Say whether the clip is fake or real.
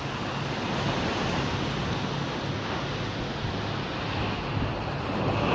real